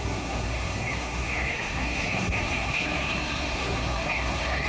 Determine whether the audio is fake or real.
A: fake